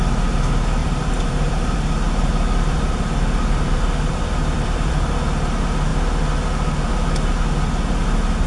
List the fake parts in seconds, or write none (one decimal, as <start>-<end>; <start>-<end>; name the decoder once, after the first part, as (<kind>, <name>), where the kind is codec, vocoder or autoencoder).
0.8-5.1 (vocoder, BigVGAN v2)